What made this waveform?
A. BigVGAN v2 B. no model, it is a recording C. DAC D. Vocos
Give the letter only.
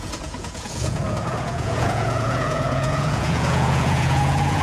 D